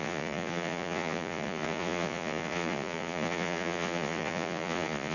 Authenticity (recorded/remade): remade